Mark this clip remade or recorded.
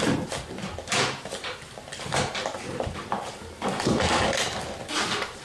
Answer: recorded